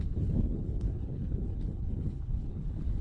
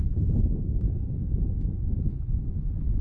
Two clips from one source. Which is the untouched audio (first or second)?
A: second